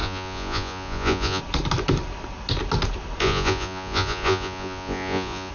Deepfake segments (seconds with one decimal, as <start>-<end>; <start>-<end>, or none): 0.0-1.4; 3.2-5.5